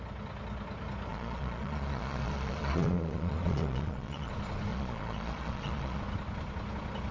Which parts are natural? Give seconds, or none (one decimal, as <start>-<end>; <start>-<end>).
0.0-1.1; 4.3-4.7; 6.0-7.1